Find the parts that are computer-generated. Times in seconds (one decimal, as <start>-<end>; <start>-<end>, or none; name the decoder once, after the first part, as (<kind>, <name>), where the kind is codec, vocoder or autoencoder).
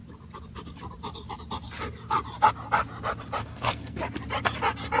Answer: 3.4-4.0 (codec, SNAC)